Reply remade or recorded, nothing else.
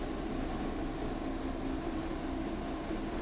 recorded